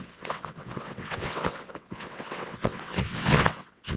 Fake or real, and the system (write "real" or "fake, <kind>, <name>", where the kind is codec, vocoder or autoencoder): fake, vocoder, WaveNeXt